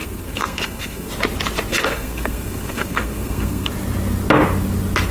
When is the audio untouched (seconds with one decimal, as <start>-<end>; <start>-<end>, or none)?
1.1-1.7; 3.7-5.1